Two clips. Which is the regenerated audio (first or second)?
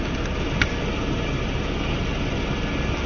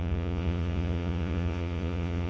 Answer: second